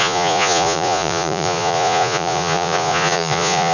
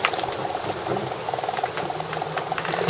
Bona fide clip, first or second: second